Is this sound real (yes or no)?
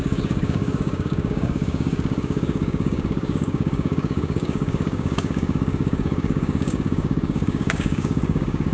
no